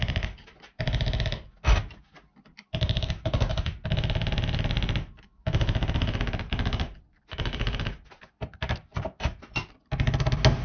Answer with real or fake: real